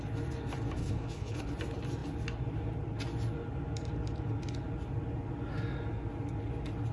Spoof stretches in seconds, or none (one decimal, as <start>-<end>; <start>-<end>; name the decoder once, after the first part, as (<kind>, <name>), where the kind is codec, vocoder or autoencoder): 0.8-1.4 (codec, HILCodec)

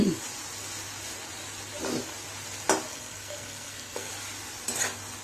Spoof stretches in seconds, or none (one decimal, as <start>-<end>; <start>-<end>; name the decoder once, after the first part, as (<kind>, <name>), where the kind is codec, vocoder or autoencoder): 2.9-4.1 (codec, SNAC)

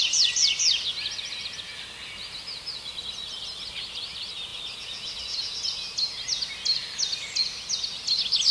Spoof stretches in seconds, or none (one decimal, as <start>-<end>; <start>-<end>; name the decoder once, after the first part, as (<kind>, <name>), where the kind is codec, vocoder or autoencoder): none

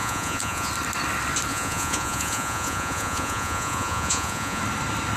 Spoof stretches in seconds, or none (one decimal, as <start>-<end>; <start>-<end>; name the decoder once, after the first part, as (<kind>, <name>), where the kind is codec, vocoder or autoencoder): 0.0-0.7 (vocoder, Vocos); 1.5-4.6

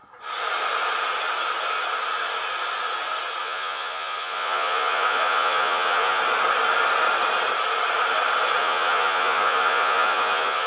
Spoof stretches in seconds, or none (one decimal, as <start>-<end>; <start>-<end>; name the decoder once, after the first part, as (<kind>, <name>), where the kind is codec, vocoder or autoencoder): 3.4-6.2 (vocoder, Vocos); 8.6-10.7

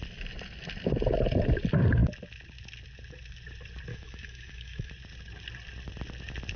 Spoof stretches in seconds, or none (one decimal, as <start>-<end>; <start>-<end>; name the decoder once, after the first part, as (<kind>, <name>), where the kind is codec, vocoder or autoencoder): 3.9-4.9 (autoencoder, DAC-VAE)